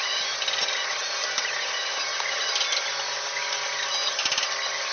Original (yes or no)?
yes